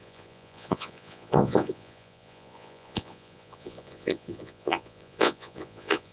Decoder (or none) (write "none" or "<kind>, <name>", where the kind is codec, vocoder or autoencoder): vocoder, Vocos